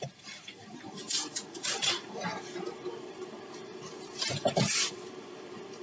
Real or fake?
fake